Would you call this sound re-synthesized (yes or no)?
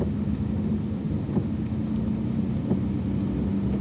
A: no